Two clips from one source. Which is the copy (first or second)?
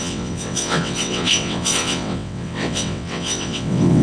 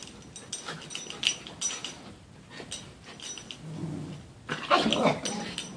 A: first